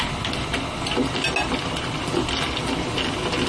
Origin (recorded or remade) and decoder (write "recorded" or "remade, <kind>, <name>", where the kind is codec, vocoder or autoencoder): recorded